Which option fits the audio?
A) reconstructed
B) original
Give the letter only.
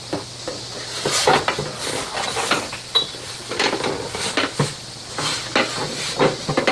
B